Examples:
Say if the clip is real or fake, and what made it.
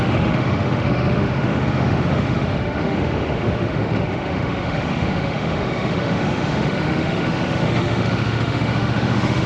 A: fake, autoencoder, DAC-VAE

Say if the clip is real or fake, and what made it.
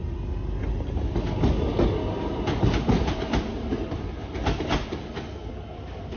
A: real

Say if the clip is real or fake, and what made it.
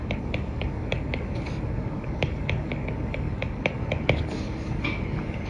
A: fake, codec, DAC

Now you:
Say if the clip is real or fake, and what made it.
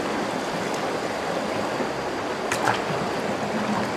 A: real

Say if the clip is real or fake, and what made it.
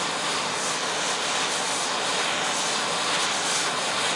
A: real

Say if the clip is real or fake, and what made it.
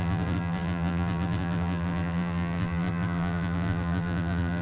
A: fake, vocoder, BigVGAN v2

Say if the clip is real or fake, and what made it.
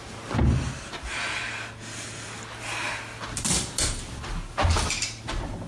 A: real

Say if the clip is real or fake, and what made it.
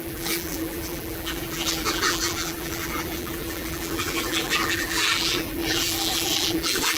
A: fake, vocoder, BigVGAN v2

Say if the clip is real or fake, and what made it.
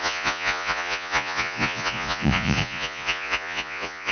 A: fake, vocoder, Vocos